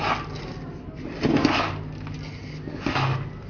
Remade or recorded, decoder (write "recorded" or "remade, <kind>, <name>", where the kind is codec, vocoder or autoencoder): recorded